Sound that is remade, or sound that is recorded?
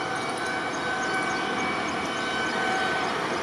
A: recorded